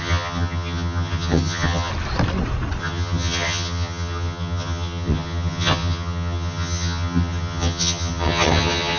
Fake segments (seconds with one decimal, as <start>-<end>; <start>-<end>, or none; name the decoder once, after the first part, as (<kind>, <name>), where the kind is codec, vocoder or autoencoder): 0.0-1.9 (vocoder, HiFi-GAN); 2.8-9.0

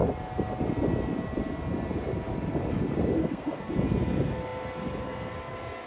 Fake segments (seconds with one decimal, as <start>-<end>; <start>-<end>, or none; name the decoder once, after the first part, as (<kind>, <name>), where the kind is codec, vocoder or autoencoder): 3.2-3.7 (codec, SNAC)

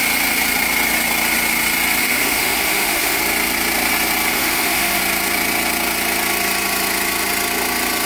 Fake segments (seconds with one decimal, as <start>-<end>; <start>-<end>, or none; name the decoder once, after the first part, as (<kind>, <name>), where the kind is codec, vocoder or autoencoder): 2.0-3.2 (autoencoder, DAC-VAE); 4.3-5.0

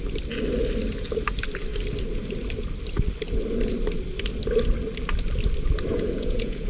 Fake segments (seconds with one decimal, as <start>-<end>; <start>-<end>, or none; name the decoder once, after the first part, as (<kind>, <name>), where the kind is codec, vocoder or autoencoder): 5.9-6.7 (vocoder, Vocos)